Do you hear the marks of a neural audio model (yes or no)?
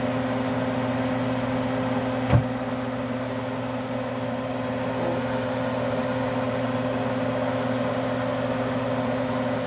no